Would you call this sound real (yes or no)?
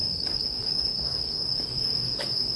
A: no